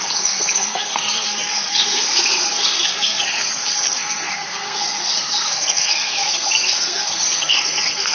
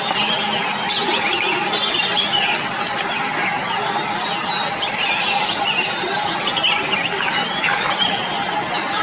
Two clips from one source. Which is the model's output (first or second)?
first